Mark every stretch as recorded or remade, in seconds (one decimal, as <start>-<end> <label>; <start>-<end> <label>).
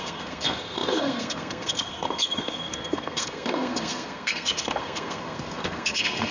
0.0-6.3 remade